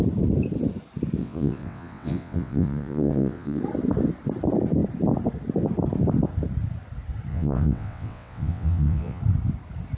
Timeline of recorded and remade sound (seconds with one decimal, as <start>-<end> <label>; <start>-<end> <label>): 0.0-1.2 recorded; 1.2-3.6 remade; 3.6-7.3 recorded; 7.3-9.2 remade; 9.2-10.0 recorded